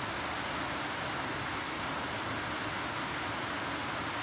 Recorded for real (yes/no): yes